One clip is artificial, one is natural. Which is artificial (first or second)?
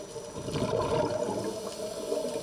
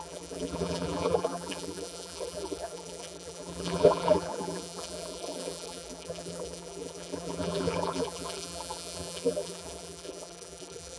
second